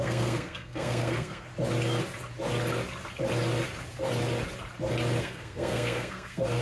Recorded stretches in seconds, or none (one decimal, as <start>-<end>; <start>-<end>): 1.5-5.2